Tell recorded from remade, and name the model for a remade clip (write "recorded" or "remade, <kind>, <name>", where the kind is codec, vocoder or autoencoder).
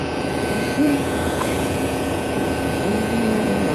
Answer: remade, vocoder, Vocos